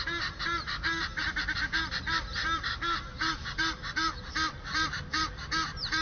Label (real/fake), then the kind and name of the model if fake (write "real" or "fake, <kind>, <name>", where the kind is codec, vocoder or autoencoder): fake, vocoder, BigVGAN v2